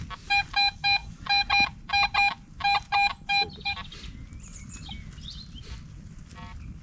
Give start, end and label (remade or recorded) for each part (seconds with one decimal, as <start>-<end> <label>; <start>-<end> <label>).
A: 0.0-6.8 recorded